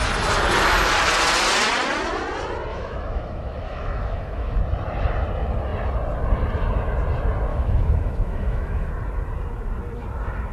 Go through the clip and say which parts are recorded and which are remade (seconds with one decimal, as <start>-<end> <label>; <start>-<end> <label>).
0.0-2.7 recorded; 2.7-4.6 remade; 4.6-7.5 recorded; 7.5-8.9 remade; 8.9-10.5 recorded

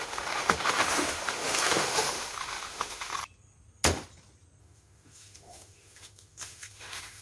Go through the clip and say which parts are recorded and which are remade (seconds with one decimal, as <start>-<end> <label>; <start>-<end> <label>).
0.0-3.2 remade; 3.2-4.6 recorded; 4.6-7.2 remade